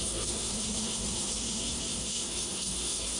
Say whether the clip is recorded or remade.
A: remade